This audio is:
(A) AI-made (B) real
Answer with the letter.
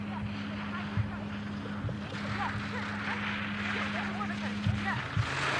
B